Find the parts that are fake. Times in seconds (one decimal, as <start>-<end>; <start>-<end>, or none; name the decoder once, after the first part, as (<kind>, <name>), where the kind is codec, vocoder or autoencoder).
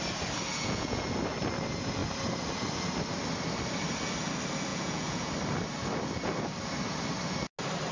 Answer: 0.5-1.0 (vocoder, Vocos); 4.7-5.3